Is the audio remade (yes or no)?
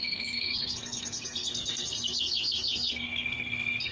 yes